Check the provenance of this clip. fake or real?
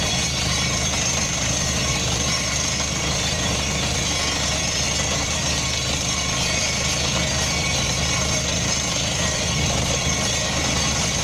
fake